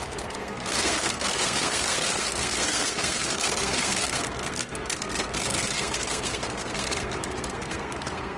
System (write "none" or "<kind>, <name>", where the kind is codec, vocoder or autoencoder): codec, SNAC